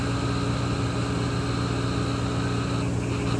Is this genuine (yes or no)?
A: yes